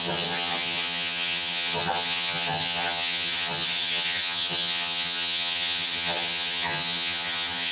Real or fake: fake